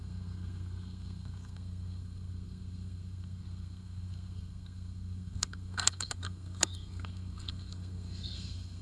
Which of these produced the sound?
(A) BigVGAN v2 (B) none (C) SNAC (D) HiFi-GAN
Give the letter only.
C